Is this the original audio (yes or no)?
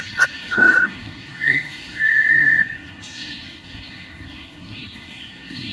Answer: no